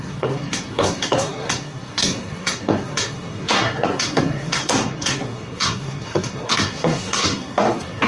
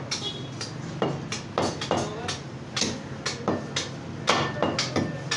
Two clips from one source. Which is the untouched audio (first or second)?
second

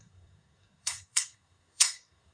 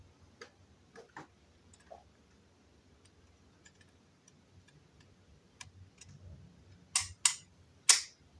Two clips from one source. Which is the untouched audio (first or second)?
second